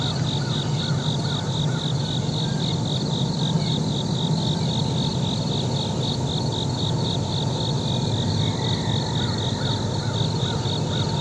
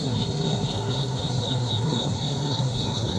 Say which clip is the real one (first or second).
first